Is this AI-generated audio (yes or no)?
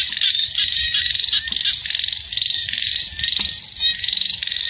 no